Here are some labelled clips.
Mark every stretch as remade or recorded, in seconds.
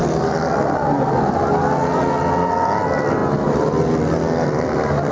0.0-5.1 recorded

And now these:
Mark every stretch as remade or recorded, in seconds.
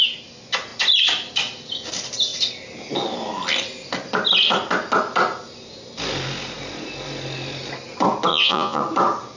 0.0-8.3 recorded; 8.3-8.8 remade; 8.8-9.4 recorded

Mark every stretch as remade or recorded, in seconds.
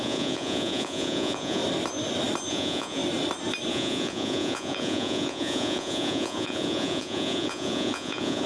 0.0-1.6 remade; 1.6-2.5 recorded; 2.5-3.0 remade; 3.0-3.7 recorded; 3.7-8.5 remade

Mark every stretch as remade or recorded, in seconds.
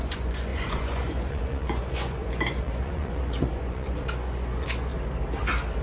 0.0-4.9 remade; 4.9-5.8 recorded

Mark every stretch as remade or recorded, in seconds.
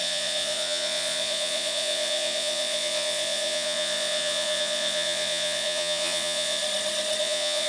0.0-6.6 remade; 6.6-7.2 recorded; 7.2-7.7 remade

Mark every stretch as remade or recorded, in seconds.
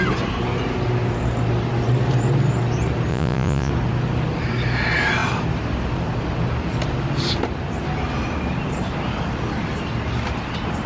0.0-3.1 recorded; 3.1-3.7 remade; 3.7-10.9 recorded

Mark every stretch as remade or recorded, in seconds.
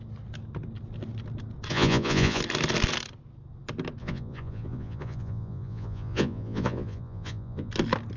0.0-1.7 recorded; 1.7-2.4 remade; 2.4-4.0 recorded; 4.0-7.7 remade; 7.7-8.2 recorded